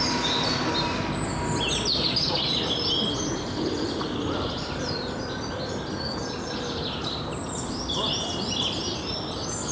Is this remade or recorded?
recorded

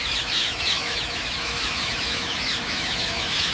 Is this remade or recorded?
remade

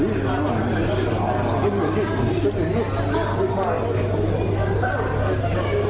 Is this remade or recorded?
recorded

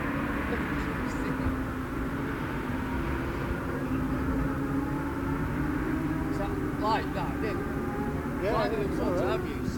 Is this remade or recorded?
recorded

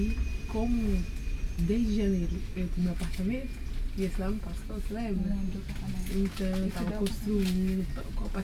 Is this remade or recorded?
recorded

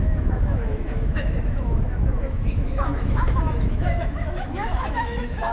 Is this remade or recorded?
remade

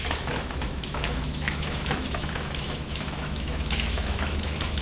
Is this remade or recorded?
remade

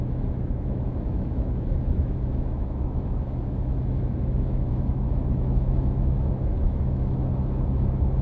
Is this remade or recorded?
remade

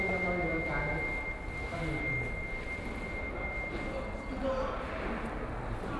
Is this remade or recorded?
recorded